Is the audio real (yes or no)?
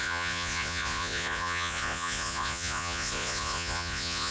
no